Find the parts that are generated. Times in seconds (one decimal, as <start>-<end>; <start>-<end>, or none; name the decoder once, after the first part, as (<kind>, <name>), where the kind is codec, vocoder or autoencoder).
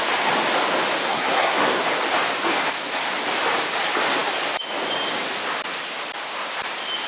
1.0-1.8 (codec, SNAC)